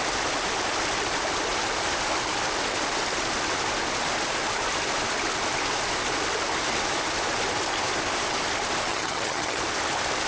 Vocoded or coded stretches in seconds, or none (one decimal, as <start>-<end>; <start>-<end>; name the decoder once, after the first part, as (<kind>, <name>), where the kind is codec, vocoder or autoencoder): 8.9-9.6 (vocoder, HiFi-GAN)